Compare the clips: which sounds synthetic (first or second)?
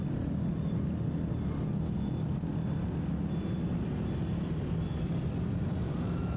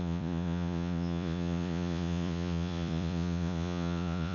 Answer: second